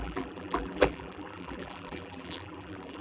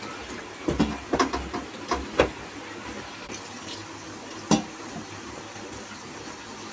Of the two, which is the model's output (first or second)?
first